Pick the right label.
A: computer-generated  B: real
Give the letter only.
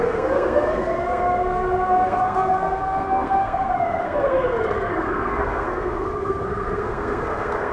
A